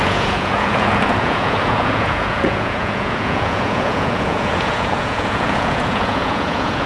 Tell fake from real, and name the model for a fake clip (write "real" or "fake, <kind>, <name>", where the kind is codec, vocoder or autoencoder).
fake, vocoder, Vocos